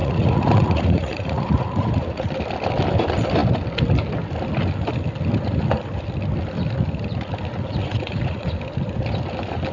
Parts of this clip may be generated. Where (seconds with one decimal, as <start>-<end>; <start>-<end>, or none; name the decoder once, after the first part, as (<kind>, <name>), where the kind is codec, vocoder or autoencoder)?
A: 0.0-2.3 (vocoder, Vocos); 7.8-8.5